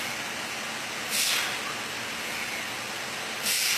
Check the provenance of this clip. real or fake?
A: real